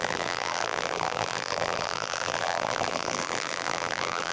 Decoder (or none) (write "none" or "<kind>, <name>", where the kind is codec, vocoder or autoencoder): vocoder, BigVGAN v2